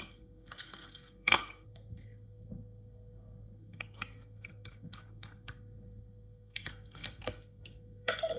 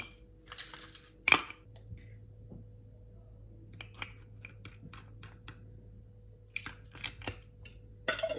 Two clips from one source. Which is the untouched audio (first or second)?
second